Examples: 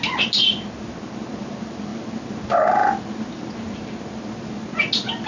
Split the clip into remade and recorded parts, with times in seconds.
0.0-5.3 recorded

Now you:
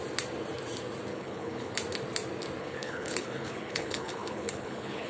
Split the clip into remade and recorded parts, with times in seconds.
0.0-1.1 recorded; 1.1-1.7 remade; 1.7-2.6 recorded; 2.6-5.1 remade

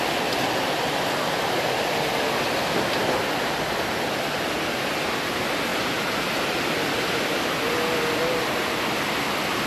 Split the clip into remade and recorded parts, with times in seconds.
0.0-9.7 recorded

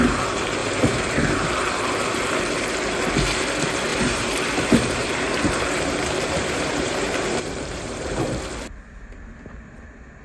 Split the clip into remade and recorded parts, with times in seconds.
0.0-0.6 recorded; 0.6-1.1 remade; 1.1-3.9 recorded; 3.9-8.4 remade; 8.4-10.2 recorded

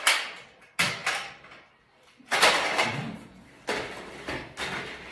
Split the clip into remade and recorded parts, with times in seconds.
0.0-1.0 recorded; 1.0-4.1 remade; 4.1-5.1 recorded

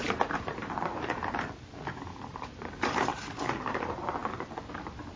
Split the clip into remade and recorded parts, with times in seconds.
0.0-1.2 remade; 1.2-2.3 recorded; 2.3-3.1 remade; 3.1-3.7 recorded; 3.7-4.2 remade; 4.2-4.7 recorded; 4.7-5.2 remade